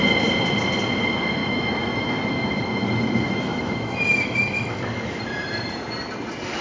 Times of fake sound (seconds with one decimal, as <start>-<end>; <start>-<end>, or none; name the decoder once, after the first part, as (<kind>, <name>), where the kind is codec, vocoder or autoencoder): 1.4-5.2 (autoencoder, DAC-VAE)